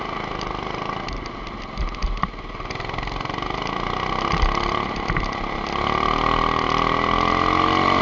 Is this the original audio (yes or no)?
yes